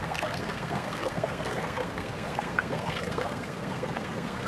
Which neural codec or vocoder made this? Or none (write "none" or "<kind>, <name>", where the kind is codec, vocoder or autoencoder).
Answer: codec, SNAC